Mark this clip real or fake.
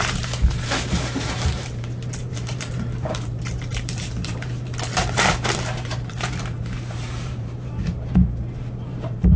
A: fake